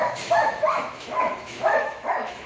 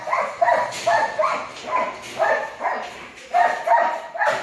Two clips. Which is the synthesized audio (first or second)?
first